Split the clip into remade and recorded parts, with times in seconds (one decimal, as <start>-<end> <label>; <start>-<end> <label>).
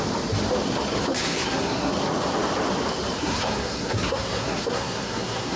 0.0-1.0 recorded; 1.0-1.9 remade; 1.9-3.2 recorded; 3.2-5.6 remade